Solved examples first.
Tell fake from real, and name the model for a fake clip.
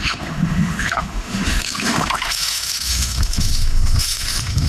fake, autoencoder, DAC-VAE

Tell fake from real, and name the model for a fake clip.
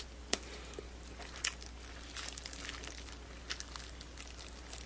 real